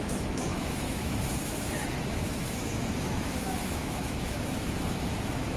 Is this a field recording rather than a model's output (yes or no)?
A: no